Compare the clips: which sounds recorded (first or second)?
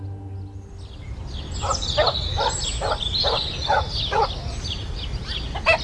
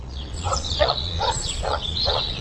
first